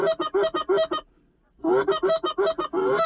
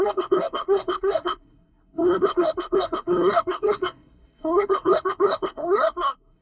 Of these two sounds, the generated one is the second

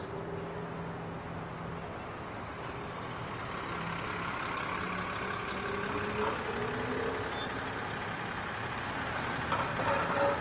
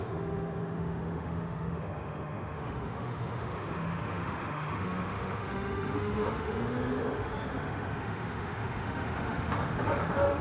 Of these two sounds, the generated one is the second